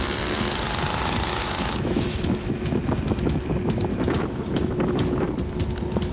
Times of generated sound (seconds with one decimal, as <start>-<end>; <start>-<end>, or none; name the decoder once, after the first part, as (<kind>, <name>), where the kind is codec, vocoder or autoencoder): 1.4-3.5 (autoencoder, DAC-VAE); 3.9-5.2